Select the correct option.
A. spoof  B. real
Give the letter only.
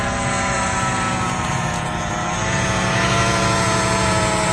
A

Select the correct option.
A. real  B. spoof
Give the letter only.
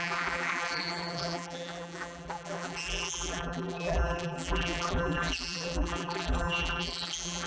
B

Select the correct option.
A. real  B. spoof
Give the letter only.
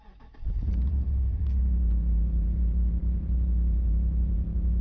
B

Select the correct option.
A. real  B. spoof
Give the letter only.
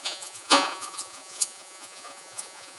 B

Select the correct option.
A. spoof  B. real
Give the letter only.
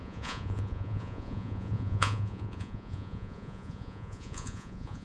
A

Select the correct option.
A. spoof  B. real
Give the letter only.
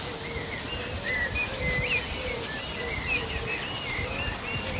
B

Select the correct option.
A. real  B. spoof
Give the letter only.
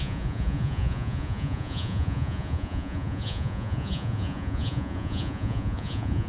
B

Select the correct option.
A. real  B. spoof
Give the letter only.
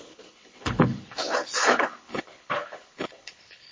B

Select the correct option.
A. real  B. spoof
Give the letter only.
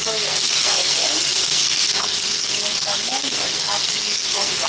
B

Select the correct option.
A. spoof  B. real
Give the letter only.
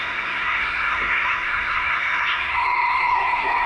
A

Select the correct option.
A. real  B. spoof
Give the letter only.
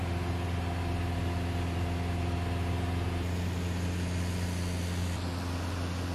A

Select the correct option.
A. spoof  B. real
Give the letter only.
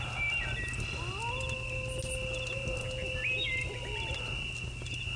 B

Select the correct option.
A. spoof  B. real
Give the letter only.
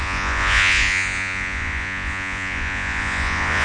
A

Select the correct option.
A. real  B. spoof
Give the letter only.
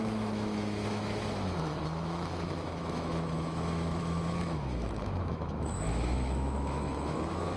B